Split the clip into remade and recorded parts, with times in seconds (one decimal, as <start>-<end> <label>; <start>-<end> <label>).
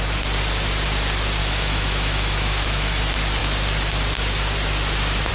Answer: 0.0-1.4 recorded; 1.4-3.0 remade; 3.0-5.3 recorded